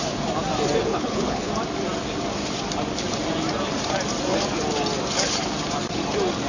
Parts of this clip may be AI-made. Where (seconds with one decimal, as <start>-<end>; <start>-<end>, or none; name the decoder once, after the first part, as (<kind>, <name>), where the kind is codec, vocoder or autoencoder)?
0.9-1.5 (codec, HILCodec)